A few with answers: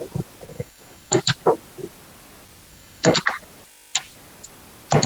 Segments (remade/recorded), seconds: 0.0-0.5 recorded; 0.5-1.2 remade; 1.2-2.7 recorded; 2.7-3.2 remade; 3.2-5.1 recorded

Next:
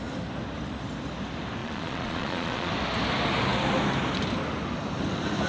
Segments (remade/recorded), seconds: 0.0-1.6 recorded; 1.6-2.7 remade; 2.7-5.5 recorded